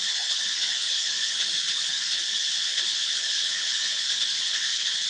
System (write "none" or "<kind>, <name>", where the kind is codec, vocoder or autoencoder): codec, HILCodec